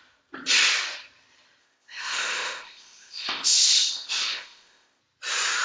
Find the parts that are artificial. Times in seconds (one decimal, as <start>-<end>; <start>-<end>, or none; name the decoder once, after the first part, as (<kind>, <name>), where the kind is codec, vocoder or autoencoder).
1.6-5.0 (codec, ZipCodec)